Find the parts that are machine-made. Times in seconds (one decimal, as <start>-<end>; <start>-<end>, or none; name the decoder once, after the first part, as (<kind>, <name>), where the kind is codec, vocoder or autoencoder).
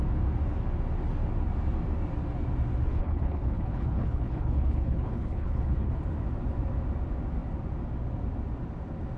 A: 2.9-5.9 (codec, HILCodec)